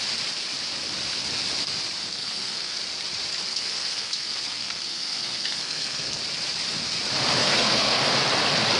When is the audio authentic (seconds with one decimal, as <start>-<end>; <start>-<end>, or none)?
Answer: 0.0-2.0; 2.8-3.5; 6.2-7.4; 8.0-8.8